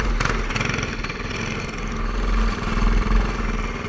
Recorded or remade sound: recorded